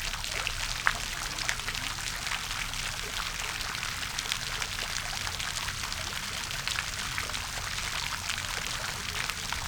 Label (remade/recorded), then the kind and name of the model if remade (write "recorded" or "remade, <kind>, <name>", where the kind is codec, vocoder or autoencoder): recorded